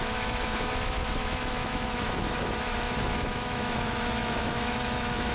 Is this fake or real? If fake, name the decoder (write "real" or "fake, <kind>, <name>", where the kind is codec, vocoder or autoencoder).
fake, autoencoder, DAC-VAE